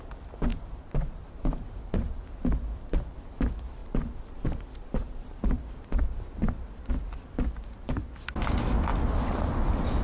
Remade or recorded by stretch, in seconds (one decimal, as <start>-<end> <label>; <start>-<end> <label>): 0.0-0.5 recorded; 0.5-3.0 remade; 3.0-3.8 recorded; 3.8-6.9 remade; 6.9-10.0 recorded